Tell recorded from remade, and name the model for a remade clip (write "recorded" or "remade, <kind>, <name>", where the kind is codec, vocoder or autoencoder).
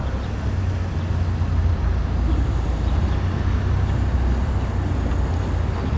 recorded